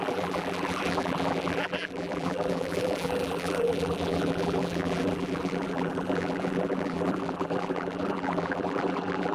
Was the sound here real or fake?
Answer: fake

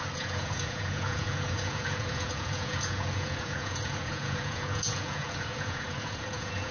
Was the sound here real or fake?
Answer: fake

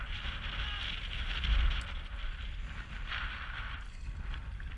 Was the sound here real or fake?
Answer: real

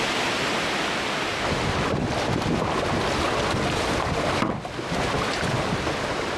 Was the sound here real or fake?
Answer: real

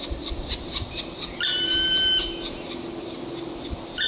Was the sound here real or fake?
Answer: real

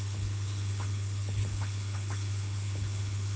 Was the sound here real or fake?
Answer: fake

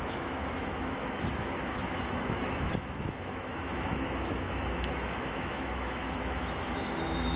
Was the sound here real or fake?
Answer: fake